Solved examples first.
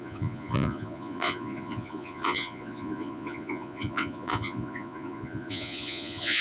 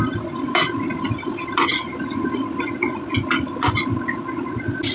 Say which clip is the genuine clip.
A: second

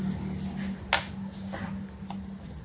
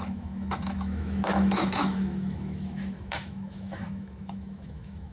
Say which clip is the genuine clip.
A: first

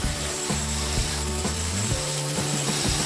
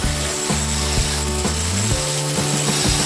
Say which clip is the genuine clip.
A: second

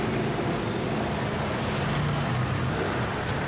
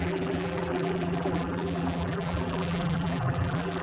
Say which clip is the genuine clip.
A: first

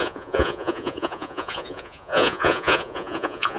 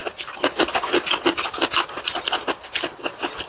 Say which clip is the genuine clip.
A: second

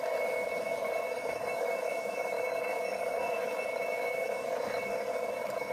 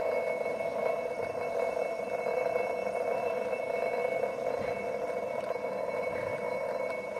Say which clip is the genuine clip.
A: second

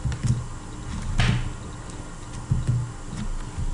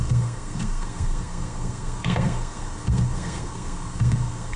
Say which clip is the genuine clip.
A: first